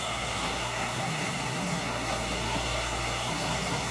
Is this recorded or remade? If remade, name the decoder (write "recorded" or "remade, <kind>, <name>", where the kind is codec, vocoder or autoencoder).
remade, codec, SNAC